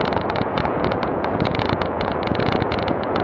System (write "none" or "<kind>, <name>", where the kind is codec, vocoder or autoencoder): vocoder, Vocos